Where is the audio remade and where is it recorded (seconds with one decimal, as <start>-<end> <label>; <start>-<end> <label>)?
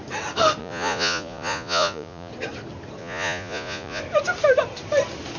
0.0-0.6 recorded; 0.6-2.3 remade; 2.3-3.0 recorded; 3.0-4.0 remade; 4.0-5.4 recorded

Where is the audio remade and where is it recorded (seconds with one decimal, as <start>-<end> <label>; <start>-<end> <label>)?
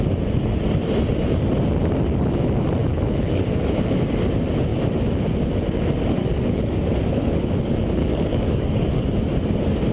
0.0-2.8 recorded; 2.8-3.4 remade; 3.4-6.2 recorded; 6.2-7.4 remade; 7.4-8.0 recorded; 8.0-9.1 remade; 9.1-9.9 recorded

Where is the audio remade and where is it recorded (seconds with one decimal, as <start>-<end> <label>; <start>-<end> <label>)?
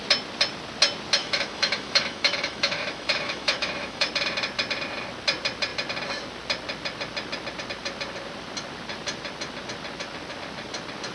0.0-1.2 recorded; 1.2-4.1 remade; 4.1-11.1 recorded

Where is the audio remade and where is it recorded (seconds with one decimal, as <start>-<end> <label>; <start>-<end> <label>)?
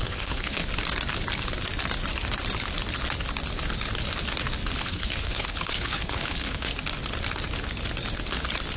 0.0-0.6 remade; 0.6-4.8 recorded; 4.8-6.7 remade; 6.7-8.8 recorded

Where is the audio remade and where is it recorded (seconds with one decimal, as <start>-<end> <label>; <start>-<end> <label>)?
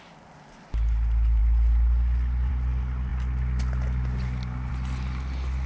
0.0-5.7 recorded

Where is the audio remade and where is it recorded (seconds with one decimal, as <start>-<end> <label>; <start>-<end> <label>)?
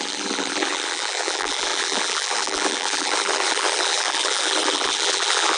0.0-5.6 remade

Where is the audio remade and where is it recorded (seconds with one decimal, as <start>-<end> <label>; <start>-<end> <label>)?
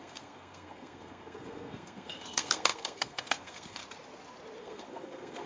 0.0-3.8 remade; 3.8-4.6 recorded; 4.6-5.5 remade